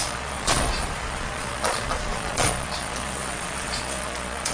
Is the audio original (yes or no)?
no